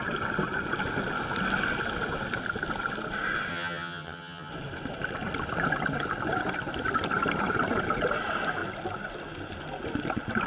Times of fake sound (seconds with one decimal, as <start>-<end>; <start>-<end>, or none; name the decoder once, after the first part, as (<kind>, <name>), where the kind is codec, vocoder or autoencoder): 3.5-4.5 (vocoder, HiFi-GAN)